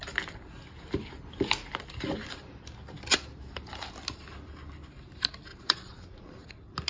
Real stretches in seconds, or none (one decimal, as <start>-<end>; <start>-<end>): 0.0-5.5; 6.5-6.9